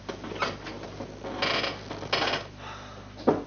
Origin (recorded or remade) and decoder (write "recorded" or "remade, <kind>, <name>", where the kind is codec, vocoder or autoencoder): recorded